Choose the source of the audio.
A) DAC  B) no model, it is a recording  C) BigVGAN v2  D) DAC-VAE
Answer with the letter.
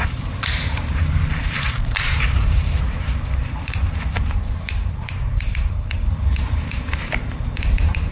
C